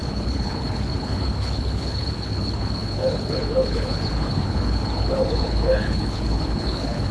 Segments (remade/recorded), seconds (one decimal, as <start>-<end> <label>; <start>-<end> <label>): 0.0-7.1 remade